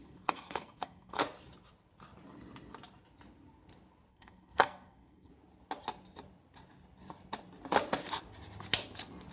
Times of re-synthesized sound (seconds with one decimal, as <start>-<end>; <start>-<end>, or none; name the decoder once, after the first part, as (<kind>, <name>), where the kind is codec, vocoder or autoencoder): 0.0-1.2 (codec, SNAC); 4.1-5.3